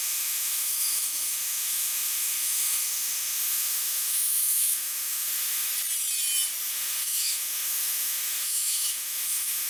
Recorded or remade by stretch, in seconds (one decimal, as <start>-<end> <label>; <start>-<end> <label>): 0.0-5.7 remade; 5.7-6.7 recorded; 6.7-9.7 remade